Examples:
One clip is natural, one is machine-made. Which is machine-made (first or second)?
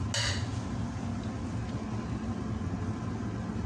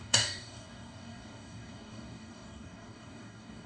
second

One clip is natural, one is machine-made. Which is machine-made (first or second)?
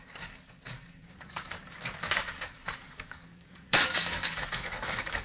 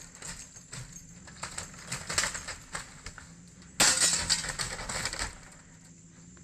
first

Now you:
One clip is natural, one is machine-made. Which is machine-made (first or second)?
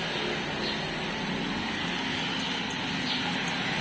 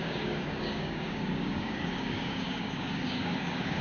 second